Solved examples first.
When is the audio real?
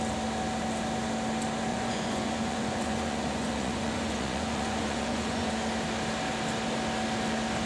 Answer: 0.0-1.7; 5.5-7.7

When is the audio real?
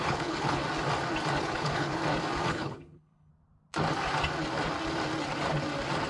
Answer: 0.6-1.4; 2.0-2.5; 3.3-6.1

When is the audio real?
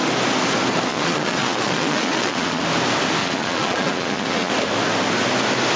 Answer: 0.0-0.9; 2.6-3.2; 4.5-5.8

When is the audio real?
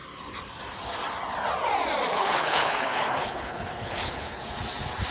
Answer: 0.0-2.1; 4.4-5.1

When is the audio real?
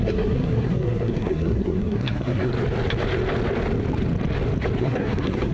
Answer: 2.5-4.8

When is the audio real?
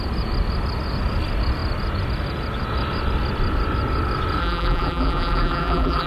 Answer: 0.0-4.4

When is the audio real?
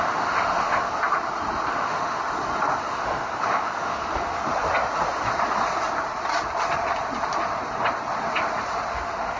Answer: 1.0-1.7; 2.2-2.8; 4.4-8.9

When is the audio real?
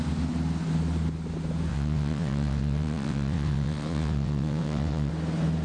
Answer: 0.0-1.7; 5.1-5.6